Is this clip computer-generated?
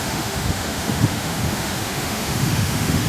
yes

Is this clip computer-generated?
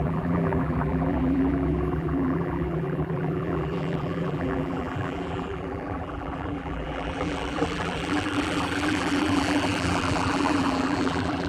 yes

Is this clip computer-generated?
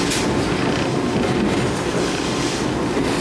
no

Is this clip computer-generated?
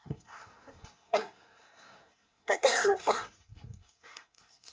yes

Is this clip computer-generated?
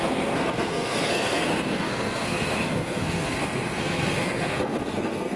yes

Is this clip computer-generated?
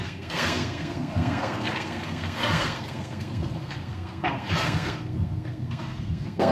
yes